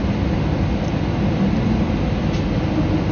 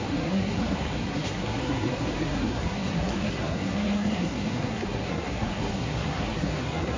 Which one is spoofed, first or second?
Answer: second